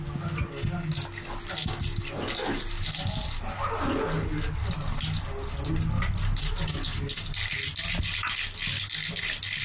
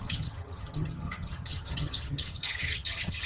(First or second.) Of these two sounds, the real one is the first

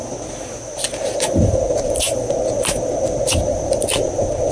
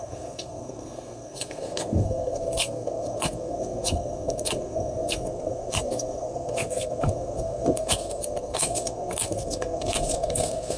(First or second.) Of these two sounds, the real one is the first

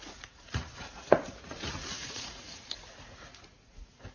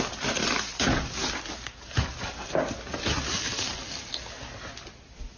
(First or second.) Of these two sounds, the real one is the second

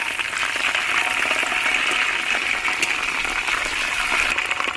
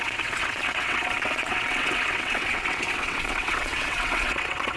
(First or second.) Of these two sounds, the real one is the first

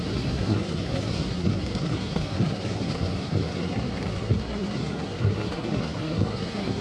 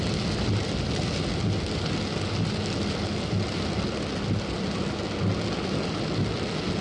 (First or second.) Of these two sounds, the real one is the second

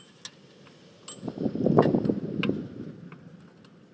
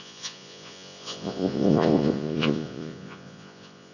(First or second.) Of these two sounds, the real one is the first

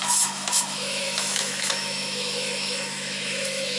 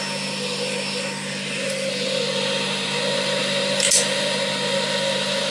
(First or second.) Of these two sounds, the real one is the second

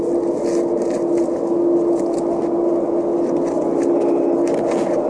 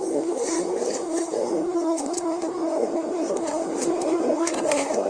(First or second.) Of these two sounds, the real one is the first